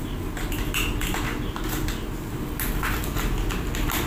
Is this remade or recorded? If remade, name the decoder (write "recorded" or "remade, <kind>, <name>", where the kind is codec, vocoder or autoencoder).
recorded